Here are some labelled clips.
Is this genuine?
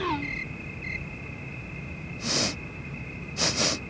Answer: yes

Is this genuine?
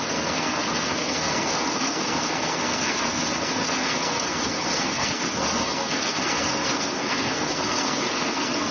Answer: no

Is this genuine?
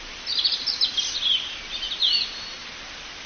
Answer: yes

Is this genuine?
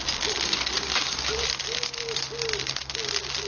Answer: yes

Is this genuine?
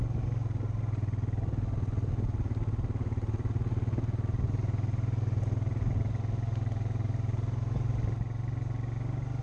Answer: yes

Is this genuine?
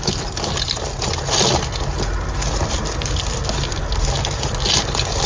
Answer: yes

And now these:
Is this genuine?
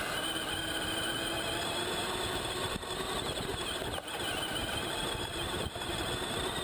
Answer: no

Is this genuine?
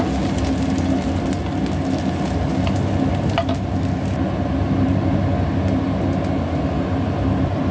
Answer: yes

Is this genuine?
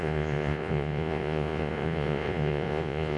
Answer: no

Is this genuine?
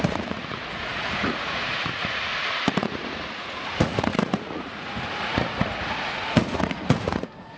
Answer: no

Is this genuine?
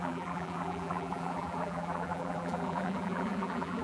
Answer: no